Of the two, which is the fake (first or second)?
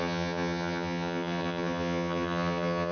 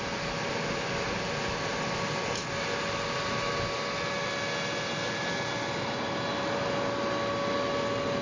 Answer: first